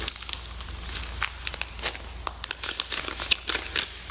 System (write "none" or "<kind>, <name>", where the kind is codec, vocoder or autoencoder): none